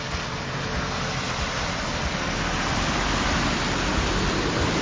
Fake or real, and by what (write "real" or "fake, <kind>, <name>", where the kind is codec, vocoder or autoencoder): real